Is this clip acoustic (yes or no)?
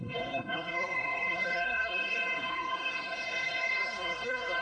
no